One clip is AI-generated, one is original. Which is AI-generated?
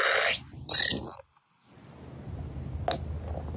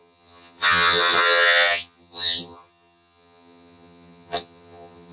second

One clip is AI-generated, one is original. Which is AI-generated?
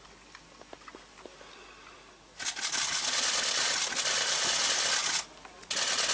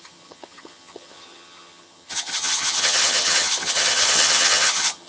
second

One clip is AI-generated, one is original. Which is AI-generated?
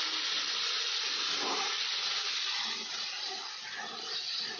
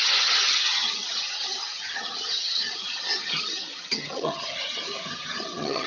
second